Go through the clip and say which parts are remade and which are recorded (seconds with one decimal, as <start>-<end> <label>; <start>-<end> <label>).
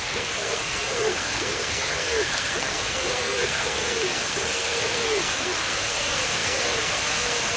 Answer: 0.0-7.6 remade